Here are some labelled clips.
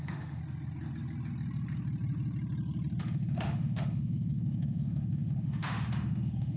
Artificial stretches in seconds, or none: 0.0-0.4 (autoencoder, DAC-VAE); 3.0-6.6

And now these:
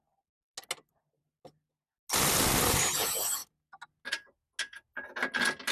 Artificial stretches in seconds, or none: none

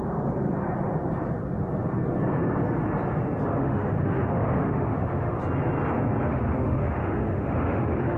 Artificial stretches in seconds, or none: 3.6-5.4 (autoencoder, DAC-VAE); 6.3-8.2

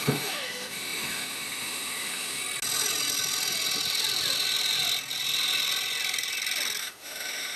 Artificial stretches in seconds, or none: 0.0-2.4 (autoencoder, DAC-VAE); 6.8-7.6

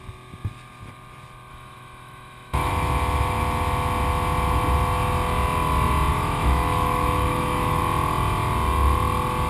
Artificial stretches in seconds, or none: 1.5-2.7 (autoencoder, DAC-VAE); 6.1-7.8

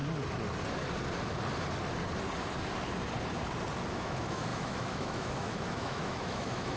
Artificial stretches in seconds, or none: 3.9-6.8 (autoencoder, DAC-VAE)

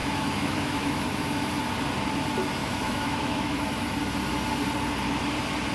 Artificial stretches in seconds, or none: 0.0-1.5 (autoencoder, DAC-VAE); 2.6-4.0